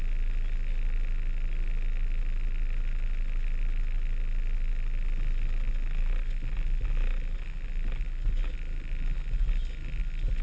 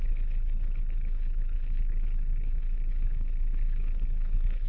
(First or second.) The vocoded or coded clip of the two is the second